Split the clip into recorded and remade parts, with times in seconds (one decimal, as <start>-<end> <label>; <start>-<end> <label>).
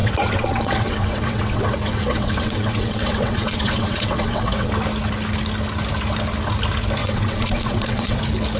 0.0-4.7 remade; 4.7-7.0 recorded; 7.0-8.2 remade; 8.2-8.6 recorded